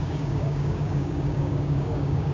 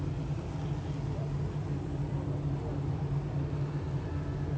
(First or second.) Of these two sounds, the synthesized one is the first